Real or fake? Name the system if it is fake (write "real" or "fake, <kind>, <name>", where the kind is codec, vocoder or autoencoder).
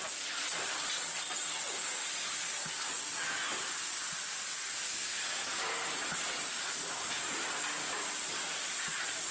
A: fake, vocoder, BigVGAN v2